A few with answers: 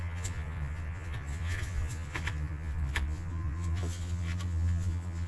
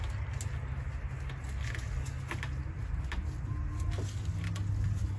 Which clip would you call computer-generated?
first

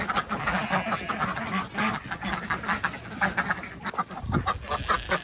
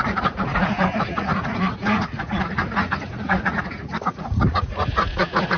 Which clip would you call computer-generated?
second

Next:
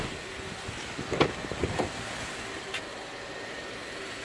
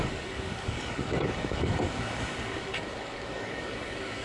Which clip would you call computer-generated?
second